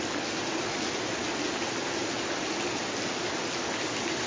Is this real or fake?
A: real